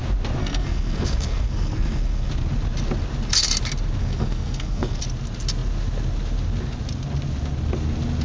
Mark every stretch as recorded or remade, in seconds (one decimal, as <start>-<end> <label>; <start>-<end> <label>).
0.0-0.4 recorded; 0.4-2.3 remade; 2.3-4.0 recorded; 4.0-5.0 remade; 5.0-8.2 recorded